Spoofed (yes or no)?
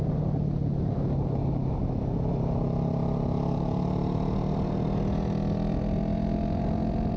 no